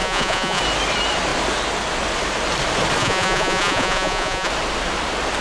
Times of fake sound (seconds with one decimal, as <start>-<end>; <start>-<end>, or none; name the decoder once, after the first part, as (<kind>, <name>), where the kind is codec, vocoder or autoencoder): 0.0-0.6 (vocoder, Vocos); 3.0-4.5